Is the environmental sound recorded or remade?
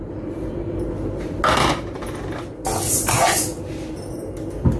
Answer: recorded